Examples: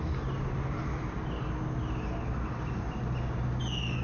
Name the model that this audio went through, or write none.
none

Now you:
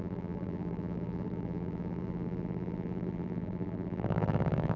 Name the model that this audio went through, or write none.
vocoder, BigVGAN v2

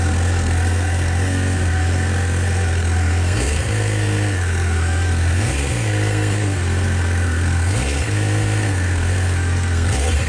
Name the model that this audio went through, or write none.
codec, SNAC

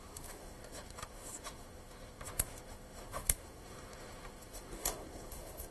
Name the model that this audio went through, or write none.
autoencoder, DAC-VAE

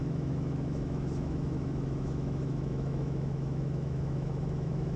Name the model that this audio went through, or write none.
autoencoder, DAC-VAE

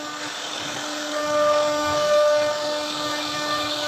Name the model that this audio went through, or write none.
codec, DAC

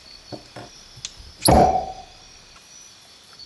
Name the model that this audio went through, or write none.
none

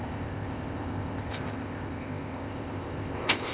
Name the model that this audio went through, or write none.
codec, ZipCodec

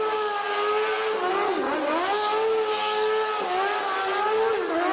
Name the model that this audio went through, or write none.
none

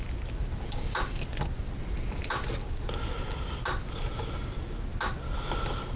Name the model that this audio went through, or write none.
none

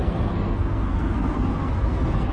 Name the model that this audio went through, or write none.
codec, SNAC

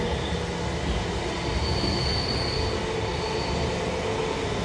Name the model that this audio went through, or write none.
none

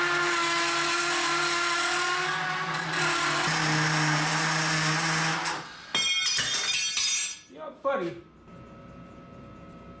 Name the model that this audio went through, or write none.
none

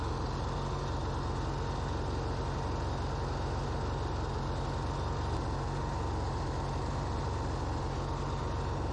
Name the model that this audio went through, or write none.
none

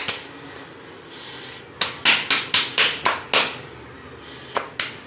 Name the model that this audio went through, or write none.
none